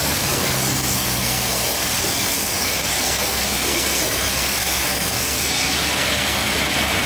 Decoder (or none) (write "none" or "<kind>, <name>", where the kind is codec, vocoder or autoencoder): codec, SNAC